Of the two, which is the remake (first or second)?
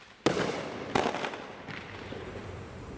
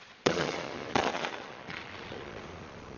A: second